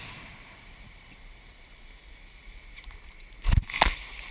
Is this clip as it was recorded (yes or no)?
yes